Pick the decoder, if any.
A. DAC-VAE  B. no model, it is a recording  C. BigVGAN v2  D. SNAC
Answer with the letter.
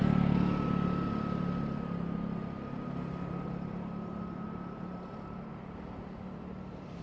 B